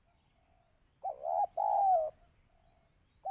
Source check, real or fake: real